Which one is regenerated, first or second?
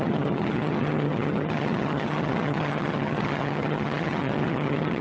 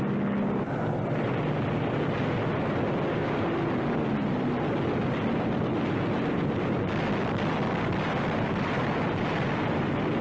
first